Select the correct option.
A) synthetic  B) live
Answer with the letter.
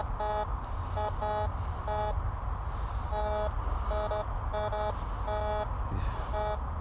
B